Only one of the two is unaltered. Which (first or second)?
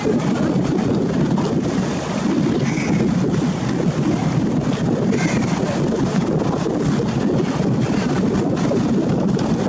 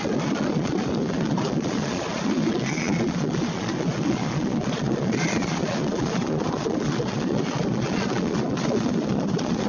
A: first